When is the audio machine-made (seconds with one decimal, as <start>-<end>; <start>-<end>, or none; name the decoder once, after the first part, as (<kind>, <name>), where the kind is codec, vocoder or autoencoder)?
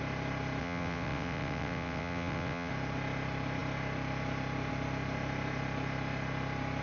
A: 0.6-2.7 (vocoder, WaveNeXt)